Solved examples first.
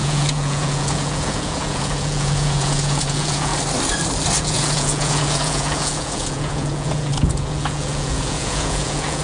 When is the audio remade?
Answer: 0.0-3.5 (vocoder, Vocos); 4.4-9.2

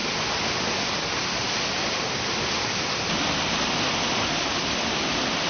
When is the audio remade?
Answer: none